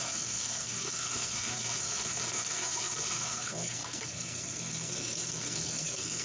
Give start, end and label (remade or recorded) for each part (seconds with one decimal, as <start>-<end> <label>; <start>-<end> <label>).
0.0-6.2 remade